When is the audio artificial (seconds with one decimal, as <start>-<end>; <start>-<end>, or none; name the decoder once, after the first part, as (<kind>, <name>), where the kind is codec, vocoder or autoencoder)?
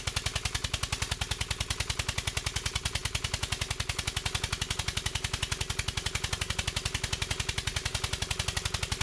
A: none